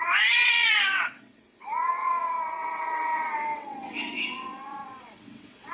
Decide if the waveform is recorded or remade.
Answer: remade